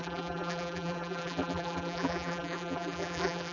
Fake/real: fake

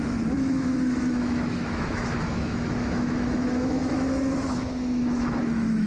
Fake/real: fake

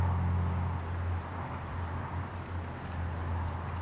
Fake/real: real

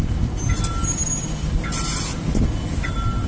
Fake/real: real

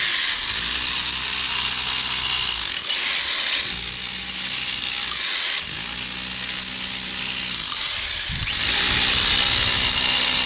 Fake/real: real